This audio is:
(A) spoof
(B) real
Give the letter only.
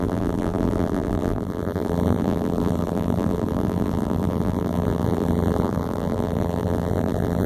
A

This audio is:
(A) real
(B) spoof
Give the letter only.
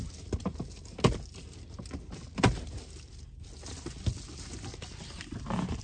A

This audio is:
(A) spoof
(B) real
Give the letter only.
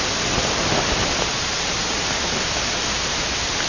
B